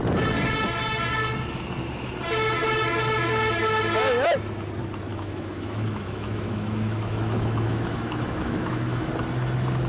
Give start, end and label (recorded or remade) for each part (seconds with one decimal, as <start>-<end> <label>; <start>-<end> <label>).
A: 0.0-5.1 recorded; 5.1-9.1 remade; 9.1-9.9 recorded